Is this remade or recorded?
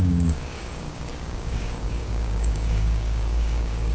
remade